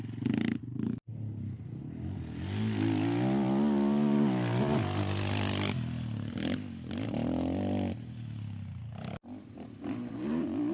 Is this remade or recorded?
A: recorded